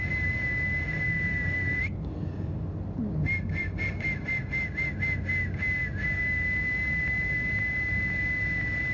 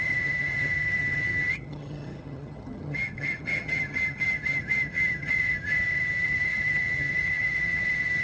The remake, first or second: second